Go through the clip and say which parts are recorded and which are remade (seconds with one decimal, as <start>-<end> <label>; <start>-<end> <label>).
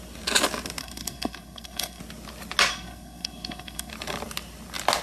0.0-0.8 recorded; 0.8-2.0 remade; 2.0-2.7 recorded; 2.7-3.9 remade; 3.9-5.0 recorded